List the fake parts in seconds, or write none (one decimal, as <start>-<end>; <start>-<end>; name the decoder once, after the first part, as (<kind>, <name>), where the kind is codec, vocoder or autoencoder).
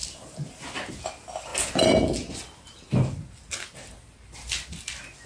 none